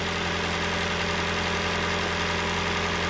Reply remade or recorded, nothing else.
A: recorded